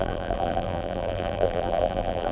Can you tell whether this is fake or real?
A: fake